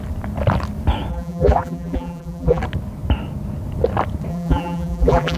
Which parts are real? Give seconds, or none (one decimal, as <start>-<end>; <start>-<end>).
0.0-1.1; 2.6-4.3